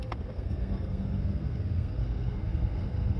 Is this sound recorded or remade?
remade